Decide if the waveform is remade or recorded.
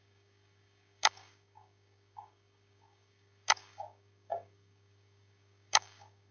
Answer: remade